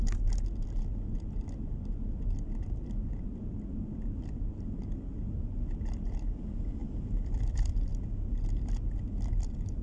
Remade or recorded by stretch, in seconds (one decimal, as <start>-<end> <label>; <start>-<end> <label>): 0.0-9.8 recorded